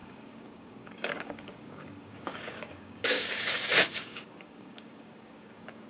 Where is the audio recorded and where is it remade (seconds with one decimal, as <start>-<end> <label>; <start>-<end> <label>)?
0.0-5.9 remade